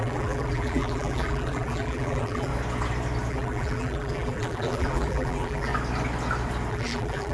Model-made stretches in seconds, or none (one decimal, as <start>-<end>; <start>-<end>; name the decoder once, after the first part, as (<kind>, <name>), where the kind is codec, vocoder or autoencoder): 0.0-2.5 (vocoder, BigVGAN v2); 3.3-5.7; 6.7-7.3